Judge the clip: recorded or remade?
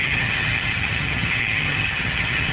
remade